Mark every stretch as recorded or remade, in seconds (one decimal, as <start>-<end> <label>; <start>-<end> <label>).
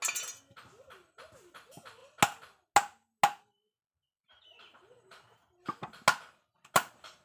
0.0-7.2 recorded